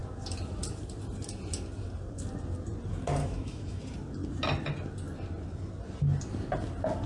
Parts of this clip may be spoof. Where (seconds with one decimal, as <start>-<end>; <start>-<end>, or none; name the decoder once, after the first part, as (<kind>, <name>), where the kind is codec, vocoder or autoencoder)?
3.2-3.8 (autoencoder, DAC-VAE)